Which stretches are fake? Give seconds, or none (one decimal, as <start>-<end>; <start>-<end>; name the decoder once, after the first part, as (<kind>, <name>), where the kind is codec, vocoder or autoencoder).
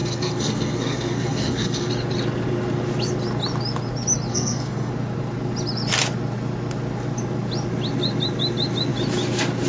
0.0-1.9 (codec, SNAC); 4.3-4.9